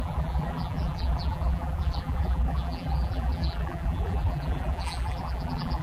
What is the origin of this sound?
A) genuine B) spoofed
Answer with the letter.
B